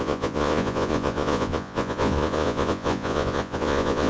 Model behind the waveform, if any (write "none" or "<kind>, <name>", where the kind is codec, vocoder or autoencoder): vocoder, Vocos